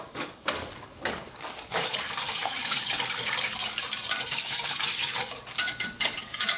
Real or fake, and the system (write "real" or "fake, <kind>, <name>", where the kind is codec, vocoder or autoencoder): fake, codec, DAC